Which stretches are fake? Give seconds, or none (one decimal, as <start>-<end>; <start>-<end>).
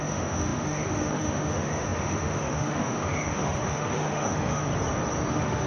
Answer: 0.0-4.7; 5.3-5.7